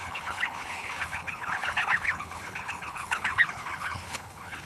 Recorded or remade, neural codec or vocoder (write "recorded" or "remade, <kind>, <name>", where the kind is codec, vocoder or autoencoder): remade, codec, HILCodec